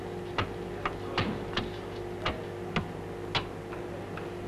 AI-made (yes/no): no